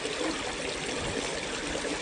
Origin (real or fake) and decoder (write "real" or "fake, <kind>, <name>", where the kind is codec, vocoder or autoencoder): real